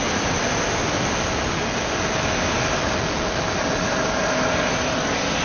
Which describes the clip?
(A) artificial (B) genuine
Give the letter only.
B